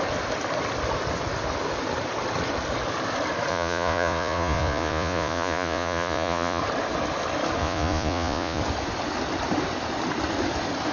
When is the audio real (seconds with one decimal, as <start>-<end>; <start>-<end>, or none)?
0.0-3.5; 6.6-7.6; 8.6-10.9